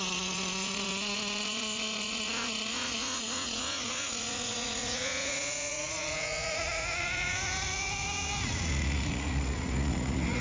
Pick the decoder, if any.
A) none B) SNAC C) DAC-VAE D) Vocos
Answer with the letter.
D